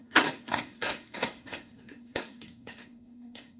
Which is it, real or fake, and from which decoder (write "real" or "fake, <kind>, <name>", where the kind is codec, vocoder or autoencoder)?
fake, codec, SNAC